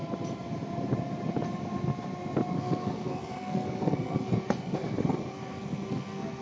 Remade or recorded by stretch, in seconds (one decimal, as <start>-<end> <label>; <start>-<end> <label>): 0.0-2.5 recorded; 2.5-6.4 remade